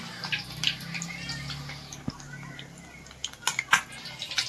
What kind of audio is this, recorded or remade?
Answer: recorded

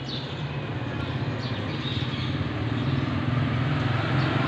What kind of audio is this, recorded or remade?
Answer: recorded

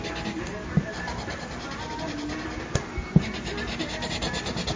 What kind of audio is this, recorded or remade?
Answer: recorded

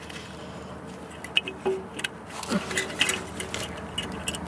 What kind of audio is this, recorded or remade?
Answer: recorded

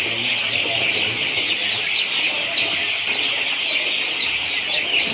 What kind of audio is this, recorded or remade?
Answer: recorded